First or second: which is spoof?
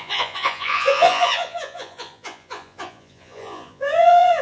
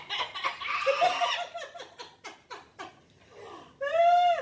first